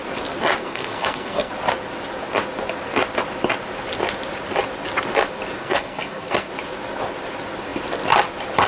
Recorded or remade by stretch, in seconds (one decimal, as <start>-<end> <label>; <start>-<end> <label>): 0.0-0.6 recorded; 0.6-1.5 remade; 1.5-5.6 recorded; 5.6-6.5 remade; 6.5-8.7 recorded